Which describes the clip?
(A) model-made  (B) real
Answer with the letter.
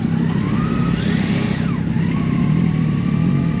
B